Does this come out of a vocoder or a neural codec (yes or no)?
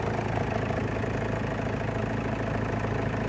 no